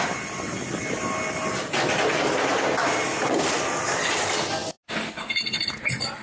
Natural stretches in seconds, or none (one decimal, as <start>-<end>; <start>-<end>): 0.0-6.2